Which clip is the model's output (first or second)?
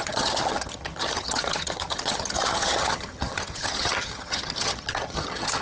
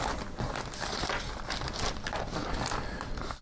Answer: first